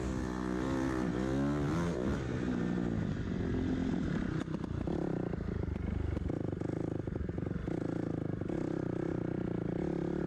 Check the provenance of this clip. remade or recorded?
recorded